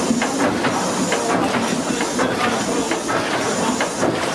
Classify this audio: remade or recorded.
recorded